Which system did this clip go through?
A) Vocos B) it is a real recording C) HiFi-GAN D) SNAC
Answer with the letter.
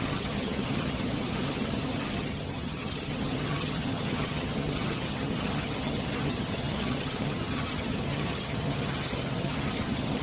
C